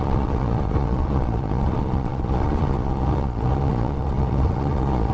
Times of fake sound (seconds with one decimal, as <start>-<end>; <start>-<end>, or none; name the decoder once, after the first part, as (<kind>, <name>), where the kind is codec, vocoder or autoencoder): 0.0-5.1 (vocoder, Vocos)

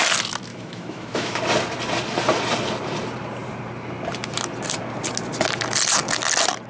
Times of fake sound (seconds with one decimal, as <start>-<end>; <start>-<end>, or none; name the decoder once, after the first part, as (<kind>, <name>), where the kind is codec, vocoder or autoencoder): 0.5-1.4 (autoencoder, DAC-VAE)

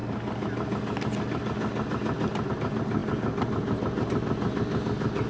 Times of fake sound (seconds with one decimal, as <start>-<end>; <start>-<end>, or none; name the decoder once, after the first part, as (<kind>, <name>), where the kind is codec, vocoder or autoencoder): none

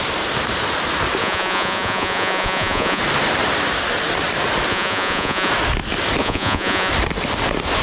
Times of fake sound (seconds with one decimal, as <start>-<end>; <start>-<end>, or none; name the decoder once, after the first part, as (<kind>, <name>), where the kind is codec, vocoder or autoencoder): 1.2-3.0 (vocoder, Vocos); 4.7-5.5; 6.2-6.9

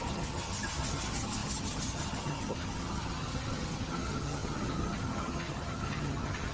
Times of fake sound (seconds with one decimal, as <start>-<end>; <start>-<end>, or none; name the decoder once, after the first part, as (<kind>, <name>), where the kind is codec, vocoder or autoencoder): 0.0-6.5 (vocoder, HiFi-GAN)